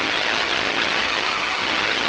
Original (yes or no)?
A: no